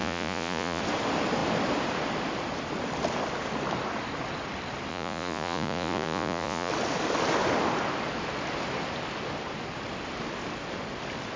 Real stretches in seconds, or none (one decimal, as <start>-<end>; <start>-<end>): 0.8-4.9; 6.7-11.4